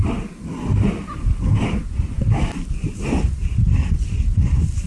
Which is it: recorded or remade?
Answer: recorded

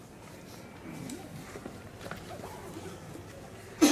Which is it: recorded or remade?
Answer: recorded